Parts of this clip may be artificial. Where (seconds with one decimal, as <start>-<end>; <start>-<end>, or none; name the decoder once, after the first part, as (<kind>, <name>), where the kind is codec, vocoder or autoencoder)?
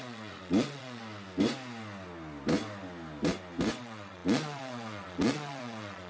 0.0-1.0 (vocoder, Vocos); 3.8-6.1